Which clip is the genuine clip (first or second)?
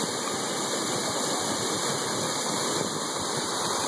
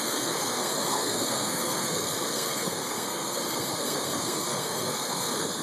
first